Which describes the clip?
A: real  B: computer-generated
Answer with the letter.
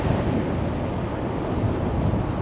A